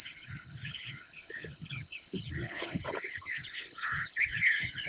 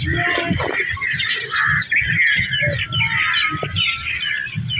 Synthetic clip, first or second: first